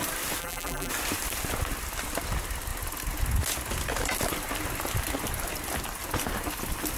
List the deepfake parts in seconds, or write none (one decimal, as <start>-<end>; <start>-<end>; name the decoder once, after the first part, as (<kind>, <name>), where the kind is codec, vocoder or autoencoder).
0.4-0.9 (vocoder, BigVGAN v2)